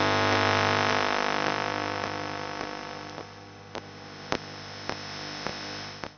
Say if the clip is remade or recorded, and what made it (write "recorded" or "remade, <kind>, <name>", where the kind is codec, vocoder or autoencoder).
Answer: recorded